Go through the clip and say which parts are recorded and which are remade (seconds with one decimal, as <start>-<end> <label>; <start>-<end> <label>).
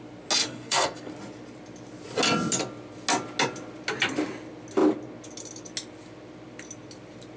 0.0-0.4 recorded; 0.4-1.1 remade; 1.1-7.4 recorded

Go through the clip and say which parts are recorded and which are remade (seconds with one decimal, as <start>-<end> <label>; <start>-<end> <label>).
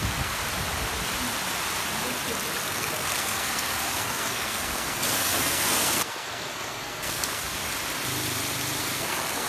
0.0-0.4 remade; 0.4-2.7 recorded; 2.7-7.6 remade; 7.6-8.8 recorded; 8.8-9.5 remade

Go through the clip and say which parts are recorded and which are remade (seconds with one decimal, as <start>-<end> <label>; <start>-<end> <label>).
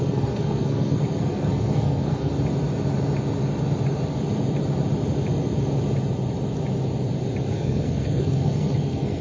0.0-2.3 remade; 2.3-7.5 recorded; 7.5-9.2 remade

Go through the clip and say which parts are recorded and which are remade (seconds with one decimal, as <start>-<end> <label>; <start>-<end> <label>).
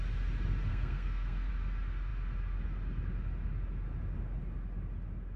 0.0-0.7 recorded; 0.7-1.5 remade; 1.5-5.4 recorded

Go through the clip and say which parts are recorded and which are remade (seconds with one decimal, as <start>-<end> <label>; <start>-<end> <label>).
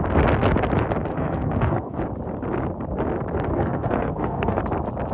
0.0-1.1 recorded; 1.1-2.0 remade; 2.0-3.5 recorded; 3.5-4.6 remade; 4.6-5.1 recorded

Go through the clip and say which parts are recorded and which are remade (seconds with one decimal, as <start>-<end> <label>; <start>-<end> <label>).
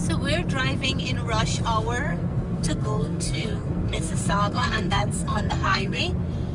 0.0-2.1 recorded; 2.1-6.0 remade; 6.0-6.5 recorded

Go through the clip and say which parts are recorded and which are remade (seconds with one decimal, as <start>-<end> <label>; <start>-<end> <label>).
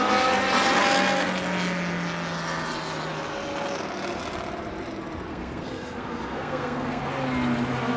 0.0-5.3 recorded; 5.3-7.0 remade; 7.0-8.0 recorded